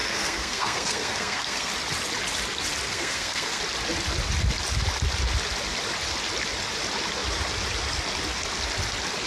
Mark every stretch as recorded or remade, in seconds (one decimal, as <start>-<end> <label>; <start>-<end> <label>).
0.0-1.7 remade; 1.7-2.9 recorded; 2.9-3.6 remade; 3.6-9.3 recorded